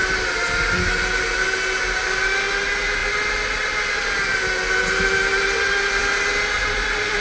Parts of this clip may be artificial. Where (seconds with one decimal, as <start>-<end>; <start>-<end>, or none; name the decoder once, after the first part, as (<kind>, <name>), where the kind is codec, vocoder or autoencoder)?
none